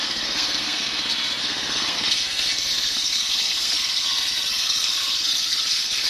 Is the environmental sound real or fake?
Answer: fake